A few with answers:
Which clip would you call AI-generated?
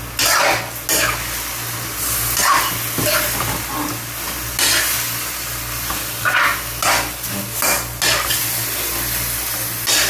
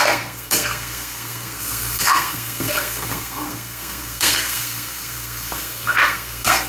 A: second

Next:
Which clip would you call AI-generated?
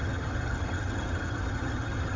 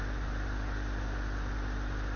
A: first